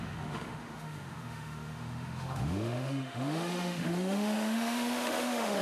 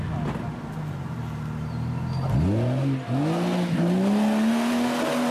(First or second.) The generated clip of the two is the first